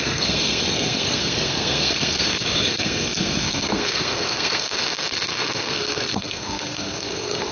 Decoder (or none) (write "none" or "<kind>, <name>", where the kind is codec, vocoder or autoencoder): codec, SNAC